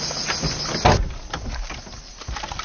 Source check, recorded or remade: recorded